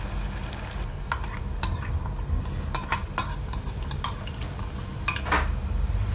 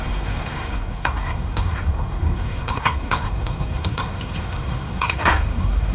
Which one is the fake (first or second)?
second